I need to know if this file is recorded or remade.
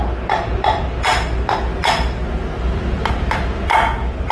recorded